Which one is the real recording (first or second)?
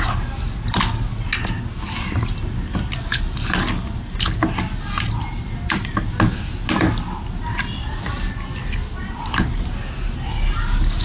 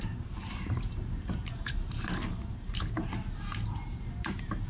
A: first